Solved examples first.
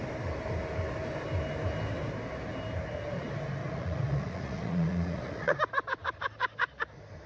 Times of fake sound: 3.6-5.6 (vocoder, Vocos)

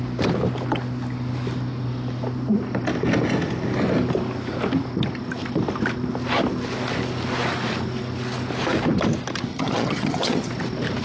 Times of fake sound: 9.5-10.5 (vocoder, HiFi-GAN)

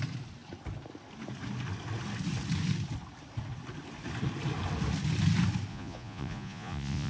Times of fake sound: 5.7-7.1 (vocoder, Vocos)

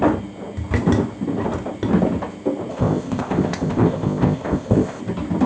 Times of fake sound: 2.7-5.0 (codec, ZipCodec)

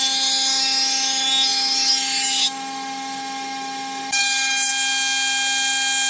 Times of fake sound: 0.0-4.7 (autoencoder, DAC-VAE)

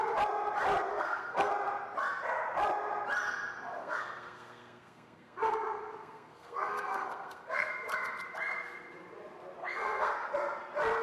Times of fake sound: 0.9-1.5 (codec, SNAC); 3.8-7.7; 9.6-10.3